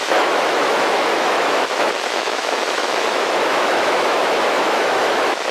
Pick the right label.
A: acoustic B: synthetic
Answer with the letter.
B